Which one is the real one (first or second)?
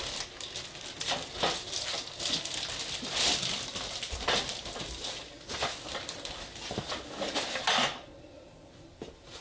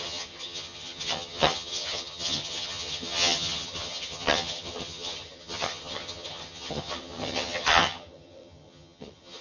first